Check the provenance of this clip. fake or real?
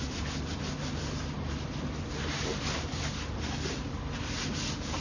real